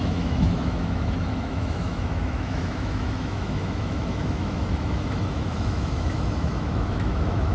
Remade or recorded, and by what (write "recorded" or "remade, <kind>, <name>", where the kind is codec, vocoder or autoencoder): remade, autoencoder, DAC-VAE